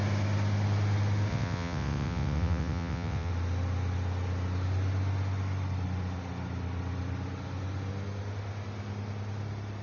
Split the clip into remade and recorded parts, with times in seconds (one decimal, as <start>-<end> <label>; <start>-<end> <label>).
0.0-1.3 recorded; 1.3-3.3 remade; 3.3-9.8 recorded